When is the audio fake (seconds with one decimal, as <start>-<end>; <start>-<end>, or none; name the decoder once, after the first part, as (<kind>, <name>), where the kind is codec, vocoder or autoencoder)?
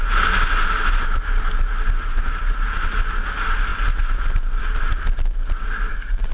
none